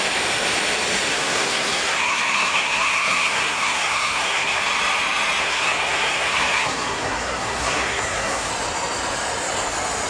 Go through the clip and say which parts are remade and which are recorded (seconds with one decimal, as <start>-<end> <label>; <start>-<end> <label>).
0.0-1.1 recorded; 1.1-4.6 remade; 4.6-5.4 recorded; 5.4-8.5 remade; 8.5-10.1 recorded